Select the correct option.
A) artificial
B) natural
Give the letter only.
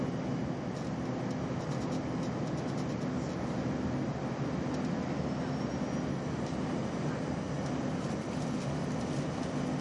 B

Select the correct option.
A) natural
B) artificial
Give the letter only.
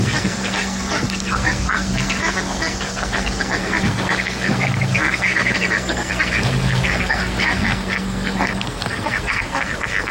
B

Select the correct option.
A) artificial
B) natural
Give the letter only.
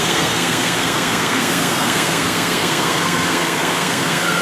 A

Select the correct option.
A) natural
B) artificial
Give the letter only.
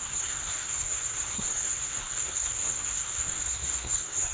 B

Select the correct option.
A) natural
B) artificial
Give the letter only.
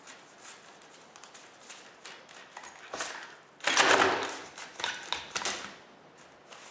A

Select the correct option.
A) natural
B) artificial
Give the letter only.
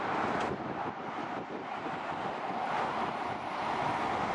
A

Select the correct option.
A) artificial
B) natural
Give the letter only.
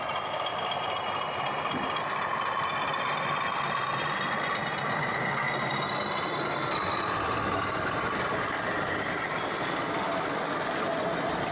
B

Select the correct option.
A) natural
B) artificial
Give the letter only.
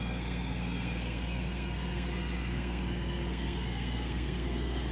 B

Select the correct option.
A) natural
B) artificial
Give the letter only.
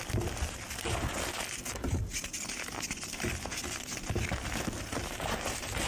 A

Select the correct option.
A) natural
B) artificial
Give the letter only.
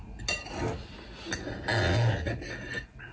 A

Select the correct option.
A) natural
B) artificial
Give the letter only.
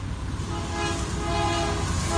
A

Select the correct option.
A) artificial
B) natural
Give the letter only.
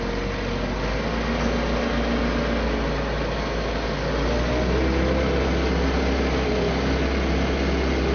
B